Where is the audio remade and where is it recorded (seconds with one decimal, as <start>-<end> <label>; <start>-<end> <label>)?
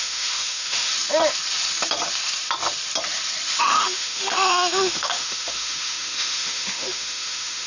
0.0-0.9 remade; 0.9-3.6 recorded; 3.6-7.7 remade